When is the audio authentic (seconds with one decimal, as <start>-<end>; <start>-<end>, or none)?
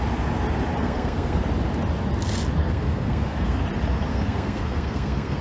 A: 0.0-0.8; 1.4-2.6; 3.6-4.1